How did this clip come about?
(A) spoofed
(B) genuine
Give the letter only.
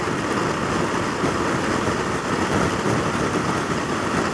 B